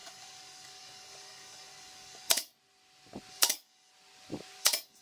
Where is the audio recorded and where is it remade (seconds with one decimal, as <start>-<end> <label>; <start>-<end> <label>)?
0.0-2.5 remade; 2.5-3.3 recorded; 3.3-3.9 remade; 3.9-4.6 recorded; 4.6-5.0 remade